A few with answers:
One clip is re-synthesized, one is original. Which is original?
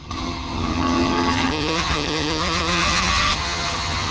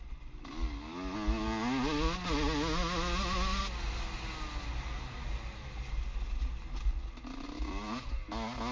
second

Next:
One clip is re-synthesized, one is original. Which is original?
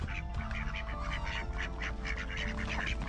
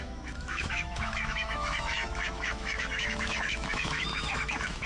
first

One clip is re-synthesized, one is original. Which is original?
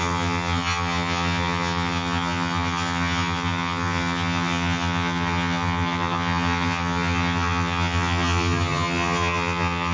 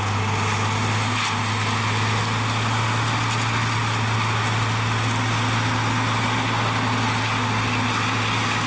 second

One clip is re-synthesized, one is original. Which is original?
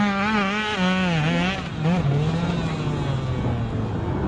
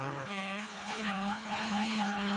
first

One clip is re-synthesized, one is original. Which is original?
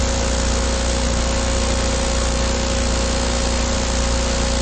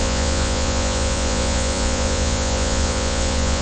first